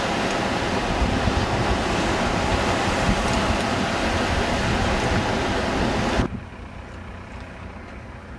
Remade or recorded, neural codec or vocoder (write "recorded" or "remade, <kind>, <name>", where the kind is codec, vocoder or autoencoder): recorded